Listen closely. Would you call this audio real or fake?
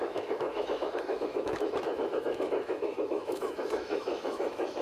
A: fake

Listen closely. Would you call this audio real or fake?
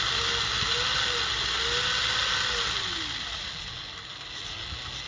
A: real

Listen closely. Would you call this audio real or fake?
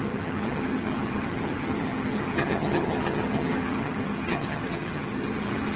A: fake